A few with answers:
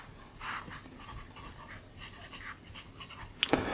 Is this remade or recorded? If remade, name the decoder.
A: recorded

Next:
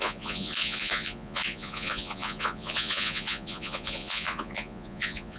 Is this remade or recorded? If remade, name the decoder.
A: remade, vocoder, Vocos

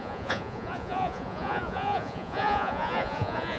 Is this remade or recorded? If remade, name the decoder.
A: remade, vocoder, Vocos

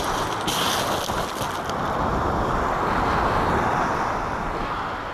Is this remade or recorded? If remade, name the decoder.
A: recorded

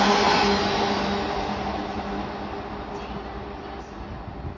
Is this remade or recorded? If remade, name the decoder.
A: recorded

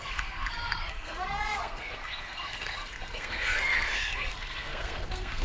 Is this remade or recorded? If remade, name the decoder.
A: remade, codec, SNAC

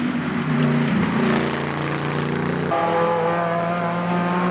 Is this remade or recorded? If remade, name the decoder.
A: recorded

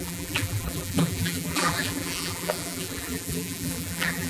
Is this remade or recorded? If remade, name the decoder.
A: remade, vocoder, BigVGAN v2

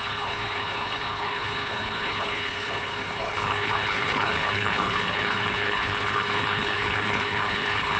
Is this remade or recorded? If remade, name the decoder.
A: remade, codec, HILCodec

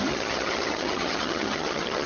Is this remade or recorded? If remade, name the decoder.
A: remade, vocoder, HiFi-GAN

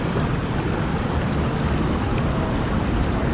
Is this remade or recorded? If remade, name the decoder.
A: recorded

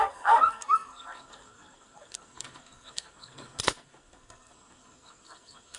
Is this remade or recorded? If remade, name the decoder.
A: remade, codec, SNAC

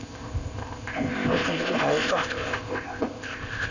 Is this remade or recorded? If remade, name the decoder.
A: remade, codec, ZipCodec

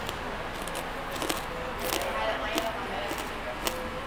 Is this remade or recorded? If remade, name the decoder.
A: recorded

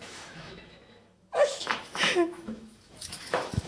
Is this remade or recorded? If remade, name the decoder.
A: remade, autoencoder, DAC-VAE